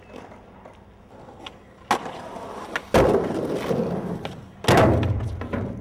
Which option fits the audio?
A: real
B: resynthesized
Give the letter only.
A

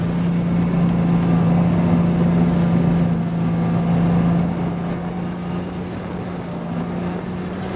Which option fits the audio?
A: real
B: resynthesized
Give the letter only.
A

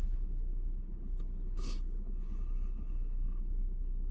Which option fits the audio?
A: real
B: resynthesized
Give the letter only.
B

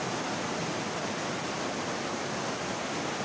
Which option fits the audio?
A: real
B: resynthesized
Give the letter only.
A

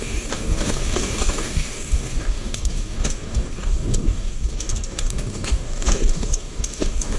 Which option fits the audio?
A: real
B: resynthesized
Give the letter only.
B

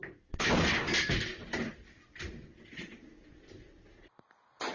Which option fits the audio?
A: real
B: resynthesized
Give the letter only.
A